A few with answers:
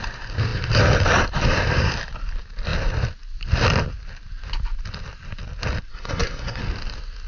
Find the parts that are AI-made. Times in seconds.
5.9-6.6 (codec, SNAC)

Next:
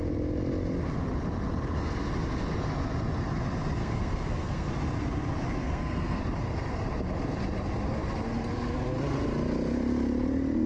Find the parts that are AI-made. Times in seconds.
3.8-4.7 (codec, SNAC); 5.6-6.2